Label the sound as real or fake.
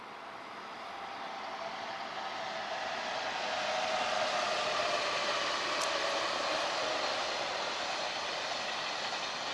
real